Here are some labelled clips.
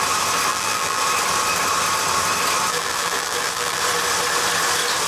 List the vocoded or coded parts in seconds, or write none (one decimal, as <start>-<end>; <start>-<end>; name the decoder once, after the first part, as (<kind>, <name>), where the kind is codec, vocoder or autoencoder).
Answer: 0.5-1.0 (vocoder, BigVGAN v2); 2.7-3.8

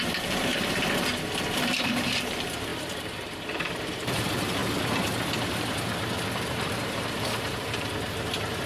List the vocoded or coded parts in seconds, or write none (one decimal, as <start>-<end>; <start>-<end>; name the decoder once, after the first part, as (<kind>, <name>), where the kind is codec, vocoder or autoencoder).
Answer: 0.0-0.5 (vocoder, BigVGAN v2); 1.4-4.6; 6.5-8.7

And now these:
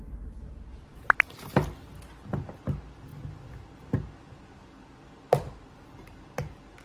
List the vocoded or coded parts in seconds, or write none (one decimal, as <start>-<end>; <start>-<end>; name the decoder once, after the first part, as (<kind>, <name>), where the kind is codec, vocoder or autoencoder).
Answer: 0.9-1.5 (vocoder, BigVGAN v2)